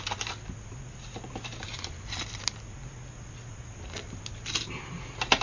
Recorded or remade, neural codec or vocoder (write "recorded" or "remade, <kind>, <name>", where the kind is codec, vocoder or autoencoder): recorded